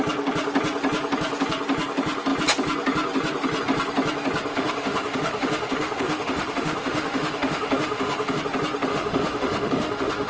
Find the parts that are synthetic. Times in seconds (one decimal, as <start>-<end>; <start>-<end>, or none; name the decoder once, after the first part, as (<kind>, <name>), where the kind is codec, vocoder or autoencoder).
4.5-8.4 (autoencoder, DAC-VAE); 8.9-10.3